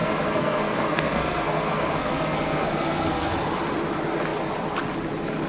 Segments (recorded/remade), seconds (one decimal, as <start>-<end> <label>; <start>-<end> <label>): 0.0-3.3 remade; 3.3-5.5 recorded